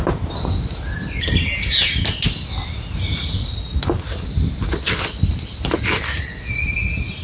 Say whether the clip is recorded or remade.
recorded